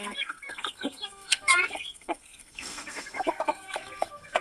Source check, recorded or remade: remade